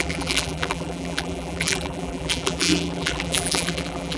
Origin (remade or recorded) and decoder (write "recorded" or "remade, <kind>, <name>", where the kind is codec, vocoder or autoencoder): remade, vocoder, BigVGAN v2